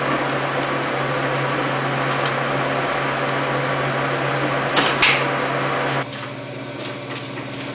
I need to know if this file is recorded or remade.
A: recorded